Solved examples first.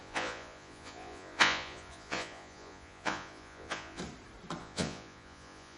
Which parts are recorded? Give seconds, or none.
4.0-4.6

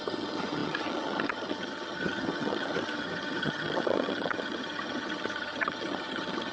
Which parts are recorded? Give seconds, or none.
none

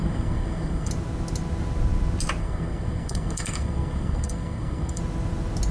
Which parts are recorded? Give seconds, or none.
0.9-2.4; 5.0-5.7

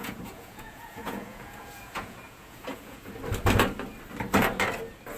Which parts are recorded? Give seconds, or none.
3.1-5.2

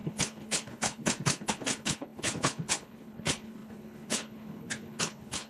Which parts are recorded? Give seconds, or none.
none

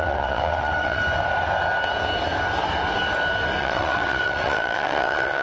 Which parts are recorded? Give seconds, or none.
1.0-3.6